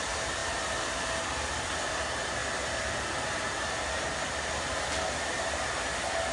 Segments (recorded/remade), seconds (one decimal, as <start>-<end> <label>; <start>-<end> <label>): 0.0-6.3 recorded